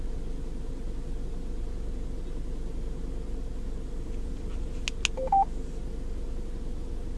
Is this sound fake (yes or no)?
no